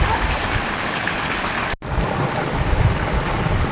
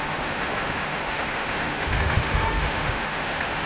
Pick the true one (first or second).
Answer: first